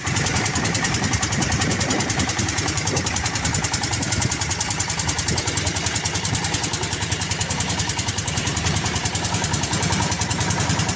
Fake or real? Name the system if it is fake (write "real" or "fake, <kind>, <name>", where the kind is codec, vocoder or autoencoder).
fake, vocoder, BigVGAN v2